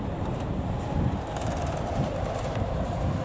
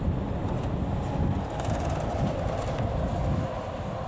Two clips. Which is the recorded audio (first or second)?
second